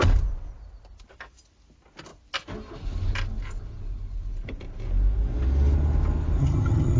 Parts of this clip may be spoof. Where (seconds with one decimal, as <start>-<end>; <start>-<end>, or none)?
6.4-7.0